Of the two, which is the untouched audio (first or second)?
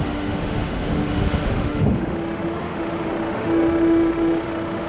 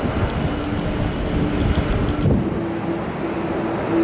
second